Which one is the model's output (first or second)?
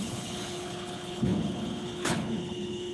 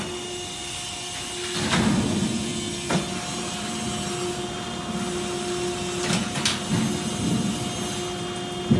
first